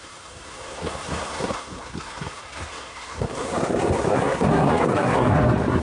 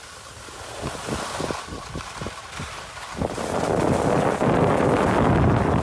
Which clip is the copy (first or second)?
first